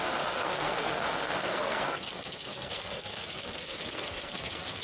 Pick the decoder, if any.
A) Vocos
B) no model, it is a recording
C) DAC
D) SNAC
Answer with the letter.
D